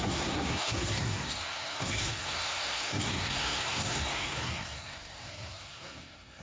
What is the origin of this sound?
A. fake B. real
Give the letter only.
A